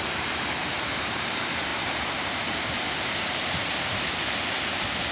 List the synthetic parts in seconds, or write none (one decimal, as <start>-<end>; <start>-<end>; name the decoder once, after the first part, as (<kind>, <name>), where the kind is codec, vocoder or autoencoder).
0.0-3.6 (vocoder, BigVGAN v2)